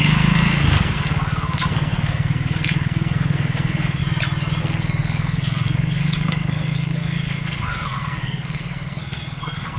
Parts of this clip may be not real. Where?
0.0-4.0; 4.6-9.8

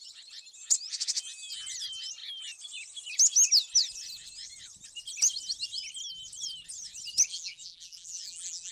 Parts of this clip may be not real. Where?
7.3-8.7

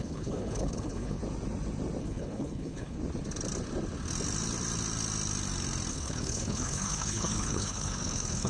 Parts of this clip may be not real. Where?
0.0-1.2; 2.0-3.0; 5.9-8.5

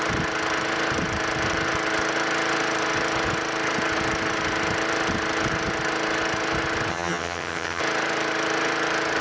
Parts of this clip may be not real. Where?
6.9-7.8